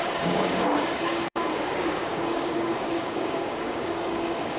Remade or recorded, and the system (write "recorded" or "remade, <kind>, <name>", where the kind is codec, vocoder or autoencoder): remade, codec, DAC